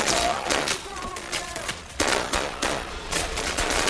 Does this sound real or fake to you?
fake